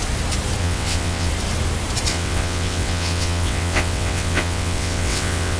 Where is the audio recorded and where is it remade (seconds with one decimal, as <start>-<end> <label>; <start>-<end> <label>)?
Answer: 0.0-0.6 recorded; 0.6-1.3 remade; 1.3-2.1 recorded; 2.1-5.6 remade